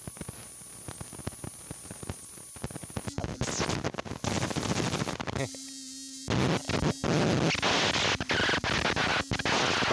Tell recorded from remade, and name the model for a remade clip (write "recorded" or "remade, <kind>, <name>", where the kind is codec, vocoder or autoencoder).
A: recorded